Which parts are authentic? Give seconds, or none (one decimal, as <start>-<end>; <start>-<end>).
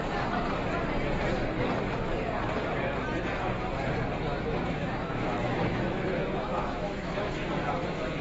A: 0.0-4.3; 7.3-8.2